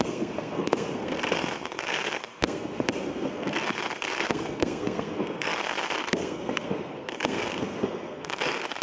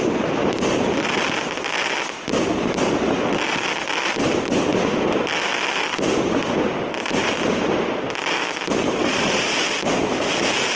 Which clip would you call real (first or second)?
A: second